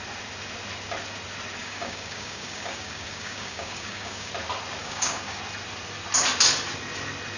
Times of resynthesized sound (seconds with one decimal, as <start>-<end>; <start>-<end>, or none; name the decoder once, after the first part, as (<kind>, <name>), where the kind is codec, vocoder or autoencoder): 1.6-4.3 (codec, DAC); 4.8-5.4